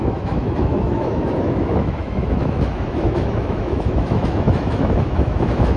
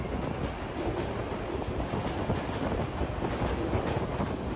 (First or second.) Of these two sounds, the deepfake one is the first